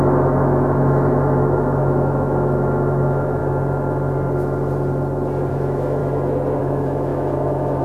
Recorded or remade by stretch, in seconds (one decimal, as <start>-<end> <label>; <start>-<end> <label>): 0.0-3.4 remade; 3.4-5.5 recorded; 5.5-6.0 remade; 6.0-6.6 recorded; 6.6-7.8 remade